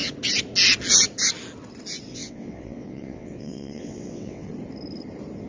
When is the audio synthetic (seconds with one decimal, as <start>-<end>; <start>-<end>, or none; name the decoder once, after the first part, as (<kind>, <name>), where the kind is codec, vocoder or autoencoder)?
2.1-4.5 (vocoder, WaveNeXt)